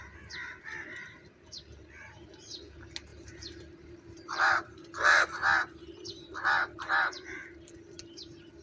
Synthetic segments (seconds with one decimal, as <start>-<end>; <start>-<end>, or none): 3.1-7.7